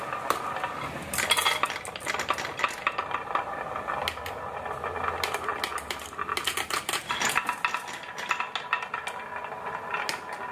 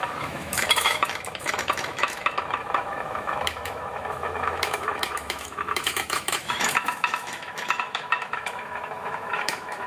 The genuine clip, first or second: first